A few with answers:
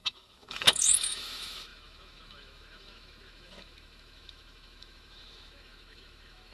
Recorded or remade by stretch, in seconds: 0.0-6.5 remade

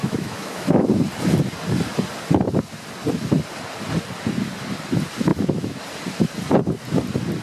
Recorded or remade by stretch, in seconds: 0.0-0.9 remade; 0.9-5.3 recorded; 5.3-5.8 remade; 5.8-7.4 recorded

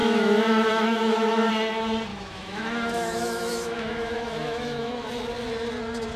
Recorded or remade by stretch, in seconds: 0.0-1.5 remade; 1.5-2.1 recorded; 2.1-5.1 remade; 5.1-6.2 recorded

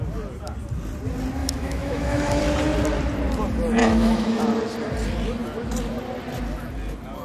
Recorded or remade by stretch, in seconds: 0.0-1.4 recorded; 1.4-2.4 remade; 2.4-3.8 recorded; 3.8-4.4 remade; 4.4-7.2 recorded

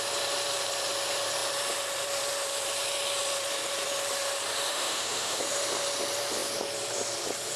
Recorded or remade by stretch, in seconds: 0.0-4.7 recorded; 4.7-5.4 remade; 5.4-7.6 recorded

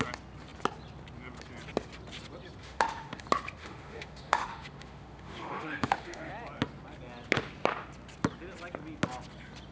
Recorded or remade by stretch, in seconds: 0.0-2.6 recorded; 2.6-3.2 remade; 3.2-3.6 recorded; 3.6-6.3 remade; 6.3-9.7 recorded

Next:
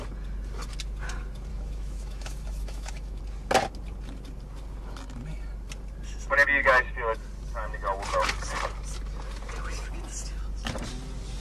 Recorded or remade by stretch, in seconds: 0.0-1.5 recorded; 1.5-3.2 remade; 3.2-11.4 recorded

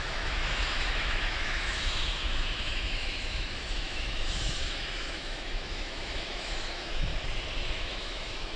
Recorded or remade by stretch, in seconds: 0.0-7.1 remade; 7.1-7.8 recorded; 7.8-8.6 remade